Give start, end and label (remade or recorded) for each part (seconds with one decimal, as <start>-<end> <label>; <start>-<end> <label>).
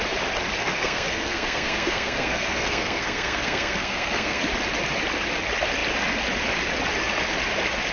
0.0-0.6 recorded; 0.6-4.4 remade; 4.4-7.9 recorded